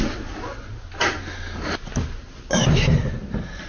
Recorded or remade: recorded